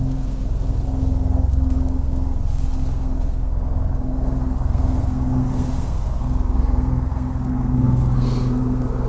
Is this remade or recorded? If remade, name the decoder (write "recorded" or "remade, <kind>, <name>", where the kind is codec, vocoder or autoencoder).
remade, codec, SNAC